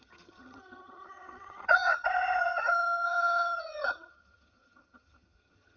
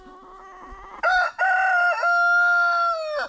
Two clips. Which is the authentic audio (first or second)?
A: second